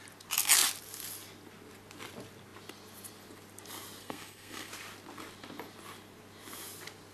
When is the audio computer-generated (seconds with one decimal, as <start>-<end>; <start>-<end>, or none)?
4.0-4.7